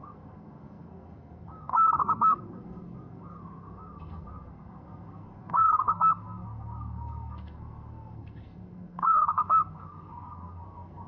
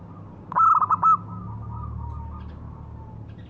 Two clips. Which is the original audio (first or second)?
second